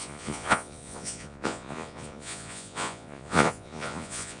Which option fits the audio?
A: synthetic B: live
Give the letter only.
A